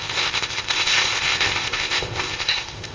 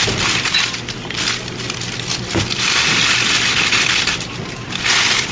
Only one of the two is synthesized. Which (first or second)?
first